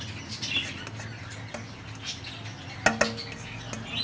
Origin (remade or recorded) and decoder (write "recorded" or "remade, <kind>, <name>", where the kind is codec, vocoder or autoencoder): recorded